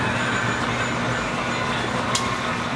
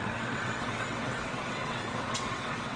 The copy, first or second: second